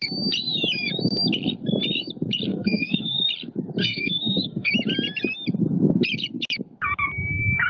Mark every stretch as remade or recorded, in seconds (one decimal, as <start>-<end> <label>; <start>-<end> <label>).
0.0-2.5 recorded; 2.5-3.2 remade; 3.2-3.8 recorded; 3.8-4.7 remade; 4.7-7.7 recorded